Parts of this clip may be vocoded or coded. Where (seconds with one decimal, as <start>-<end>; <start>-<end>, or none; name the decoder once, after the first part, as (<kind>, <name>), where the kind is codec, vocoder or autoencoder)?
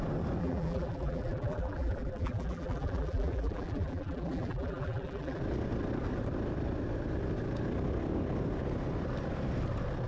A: 0.4-5.4 (vocoder, BigVGAN v2)